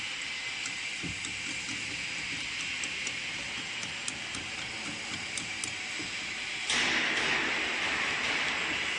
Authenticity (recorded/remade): recorded